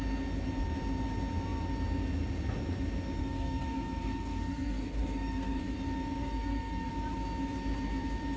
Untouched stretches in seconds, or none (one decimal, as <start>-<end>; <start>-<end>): 0.0-3.2; 5.6-6.2; 6.9-8.4